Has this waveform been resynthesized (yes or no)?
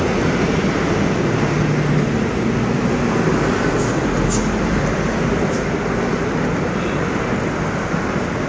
no